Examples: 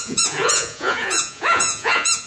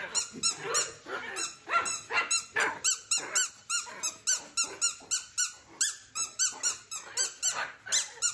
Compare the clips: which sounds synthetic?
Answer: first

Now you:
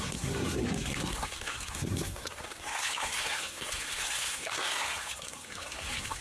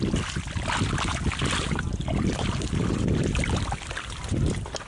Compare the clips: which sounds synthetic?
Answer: first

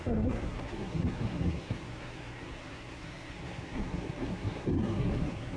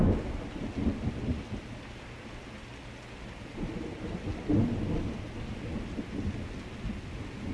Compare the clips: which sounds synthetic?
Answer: first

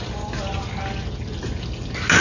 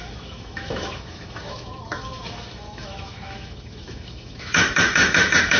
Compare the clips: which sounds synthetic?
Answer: second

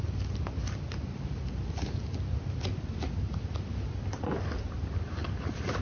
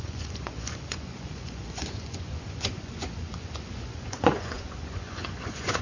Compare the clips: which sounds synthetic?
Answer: second